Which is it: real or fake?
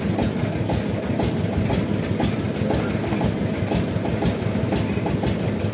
real